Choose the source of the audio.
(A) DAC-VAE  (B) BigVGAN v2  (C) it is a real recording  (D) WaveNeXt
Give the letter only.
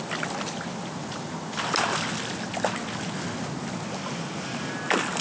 C